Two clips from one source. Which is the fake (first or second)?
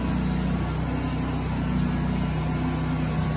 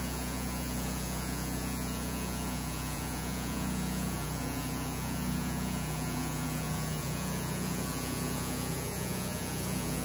second